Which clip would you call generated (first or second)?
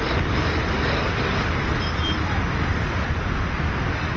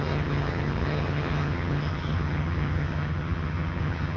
second